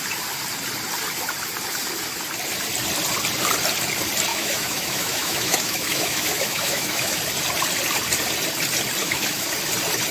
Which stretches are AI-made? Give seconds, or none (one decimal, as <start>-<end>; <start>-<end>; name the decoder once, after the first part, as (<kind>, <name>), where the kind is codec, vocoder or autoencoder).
4.3-7.2 (autoencoder, DAC-VAE); 9.0-9.5